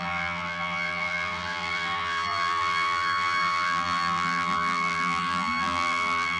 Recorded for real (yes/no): no